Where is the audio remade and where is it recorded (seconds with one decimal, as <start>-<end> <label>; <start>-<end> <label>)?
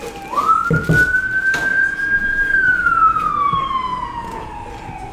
0.0-1.7 recorded; 1.7-3.3 remade; 3.3-3.9 recorded; 3.9-4.5 remade; 4.5-5.1 recorded